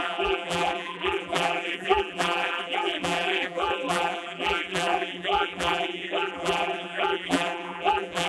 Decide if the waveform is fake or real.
fake